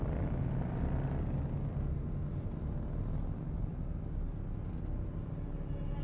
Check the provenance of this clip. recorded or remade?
recorded